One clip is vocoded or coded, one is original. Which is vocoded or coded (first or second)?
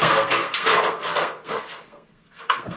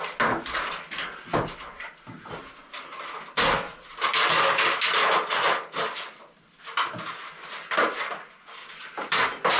first